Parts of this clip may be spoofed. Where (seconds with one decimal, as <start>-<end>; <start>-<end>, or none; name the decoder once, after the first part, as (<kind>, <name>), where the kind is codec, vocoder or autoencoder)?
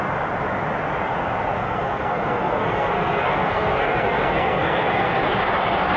1.6-5.2 (codec, SNAC)